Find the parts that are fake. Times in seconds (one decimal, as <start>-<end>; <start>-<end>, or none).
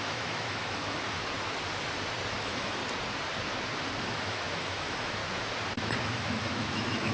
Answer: 0.0-1.2; 2.4-2.8; 4.0-5.2; 6.0-7.1